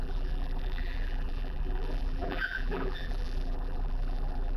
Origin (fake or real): fake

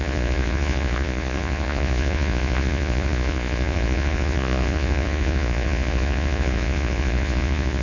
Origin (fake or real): fake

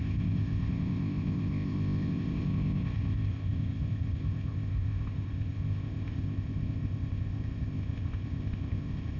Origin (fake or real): fake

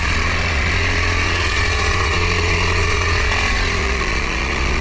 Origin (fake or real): fake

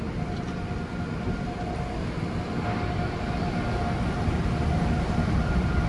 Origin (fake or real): real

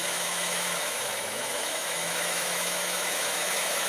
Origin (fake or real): fake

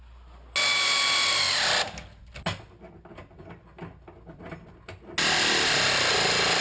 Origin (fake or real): real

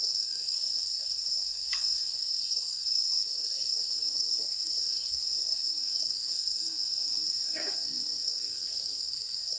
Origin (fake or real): fake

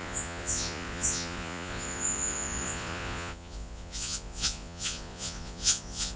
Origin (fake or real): fake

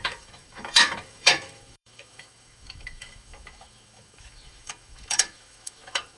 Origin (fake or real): fake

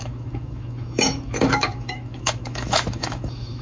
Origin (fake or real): fake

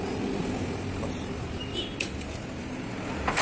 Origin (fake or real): real